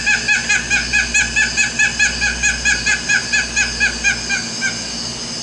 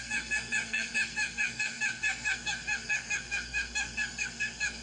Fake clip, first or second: second